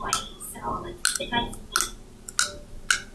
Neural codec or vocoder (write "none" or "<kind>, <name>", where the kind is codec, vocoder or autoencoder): none